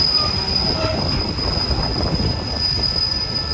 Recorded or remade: recorded